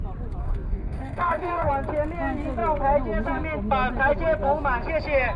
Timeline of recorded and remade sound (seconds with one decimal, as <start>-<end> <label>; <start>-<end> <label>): 0.0-0.4 recorded; 0.4-1.7 remade; 1.7-5.4 recorded